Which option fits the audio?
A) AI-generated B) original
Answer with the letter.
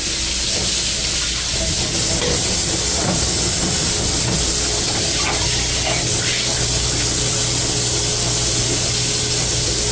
B